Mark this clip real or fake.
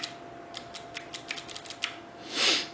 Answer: real